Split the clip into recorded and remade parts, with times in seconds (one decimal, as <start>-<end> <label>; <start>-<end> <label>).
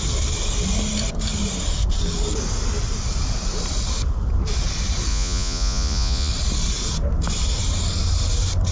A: 0.0-5.1 recorded; 5.1-6.3 remade; 6.3-8.7 recorded